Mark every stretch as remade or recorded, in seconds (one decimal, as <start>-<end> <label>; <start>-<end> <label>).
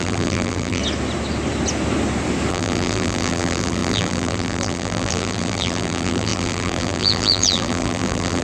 0.0-0.8 remade; 0.8-2.5 recorded; 2.5-8.4 remade